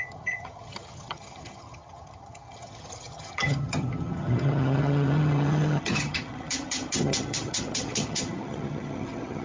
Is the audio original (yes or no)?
no